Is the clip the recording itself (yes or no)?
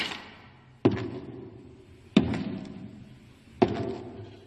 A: yes